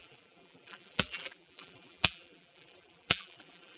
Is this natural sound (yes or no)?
no